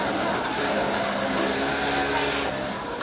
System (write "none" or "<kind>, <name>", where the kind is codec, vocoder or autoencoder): none